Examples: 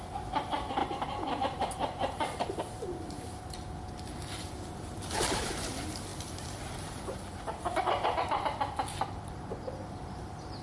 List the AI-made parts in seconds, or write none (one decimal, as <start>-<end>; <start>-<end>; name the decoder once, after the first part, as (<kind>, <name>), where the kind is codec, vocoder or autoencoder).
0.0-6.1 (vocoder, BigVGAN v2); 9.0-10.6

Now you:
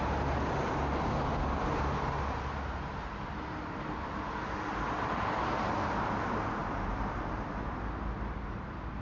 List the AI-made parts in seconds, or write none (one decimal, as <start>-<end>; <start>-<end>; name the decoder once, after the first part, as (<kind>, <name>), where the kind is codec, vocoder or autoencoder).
6.6-7.8 (vocoder, BigVGAN v2)

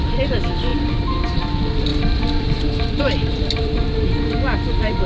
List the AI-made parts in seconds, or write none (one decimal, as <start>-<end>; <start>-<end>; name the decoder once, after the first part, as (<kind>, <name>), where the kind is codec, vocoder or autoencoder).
0.7-1.4 (vocoder, BigVGAN v2); 1.9-5.1

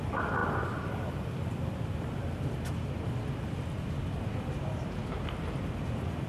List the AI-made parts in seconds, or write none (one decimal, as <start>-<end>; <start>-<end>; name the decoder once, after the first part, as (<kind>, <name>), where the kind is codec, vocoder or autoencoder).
none